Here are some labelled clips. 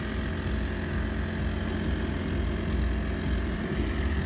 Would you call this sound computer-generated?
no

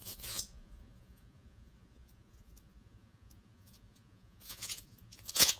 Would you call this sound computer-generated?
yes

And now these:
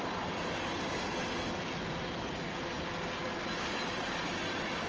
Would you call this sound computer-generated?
no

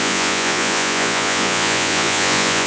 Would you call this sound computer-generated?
yes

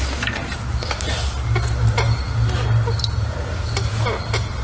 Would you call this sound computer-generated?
no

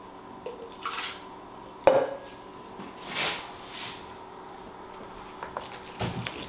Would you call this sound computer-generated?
no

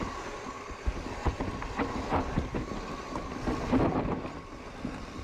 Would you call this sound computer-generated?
no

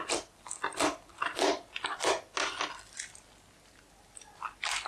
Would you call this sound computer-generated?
no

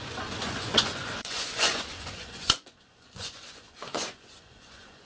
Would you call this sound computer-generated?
yes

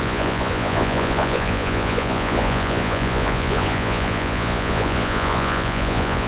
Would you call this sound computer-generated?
yes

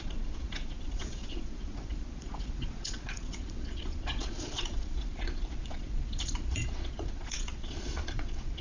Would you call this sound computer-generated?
yes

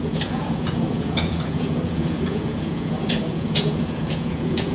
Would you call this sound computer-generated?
yes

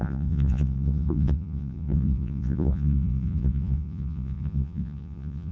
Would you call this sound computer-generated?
yes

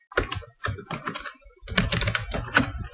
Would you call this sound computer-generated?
no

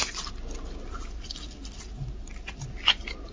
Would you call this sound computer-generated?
no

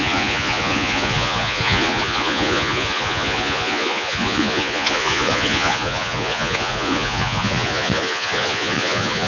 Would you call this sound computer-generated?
yes